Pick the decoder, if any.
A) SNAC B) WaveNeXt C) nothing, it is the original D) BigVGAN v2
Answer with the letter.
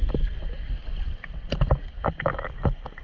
C